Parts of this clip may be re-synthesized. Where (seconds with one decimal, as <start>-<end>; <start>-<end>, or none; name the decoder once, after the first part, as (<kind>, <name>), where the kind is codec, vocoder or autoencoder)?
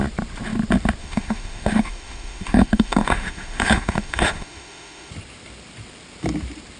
1.0-5.1 (autoencoder, DAC-VAE)